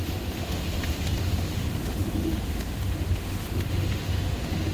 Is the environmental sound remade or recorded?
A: remade